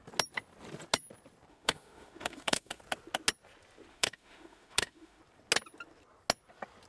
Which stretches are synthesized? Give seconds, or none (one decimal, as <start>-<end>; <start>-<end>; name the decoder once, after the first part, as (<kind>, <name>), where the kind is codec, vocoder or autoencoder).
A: 1.5-2.8 (autoencoder, DAC-VAE); 3.9-5.2